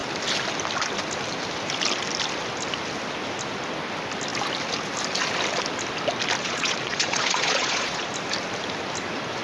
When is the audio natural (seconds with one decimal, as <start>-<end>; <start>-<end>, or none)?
0.0-6.4; 8.1-9.4